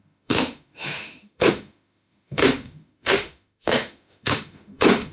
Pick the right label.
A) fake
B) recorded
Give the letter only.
A